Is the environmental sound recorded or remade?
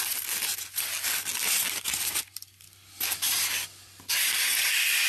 recorded